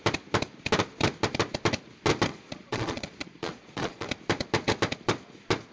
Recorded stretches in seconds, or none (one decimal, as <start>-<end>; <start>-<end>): 0.0-2.3; 4.1-5.7